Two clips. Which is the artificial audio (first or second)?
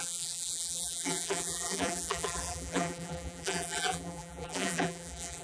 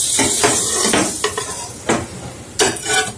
first